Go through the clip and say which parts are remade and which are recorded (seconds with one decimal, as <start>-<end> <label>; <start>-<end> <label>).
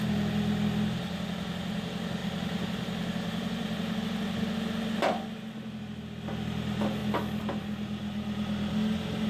0.0-2.2 recorded; 2.2-4.0 remade; 4.0-9.3 recorded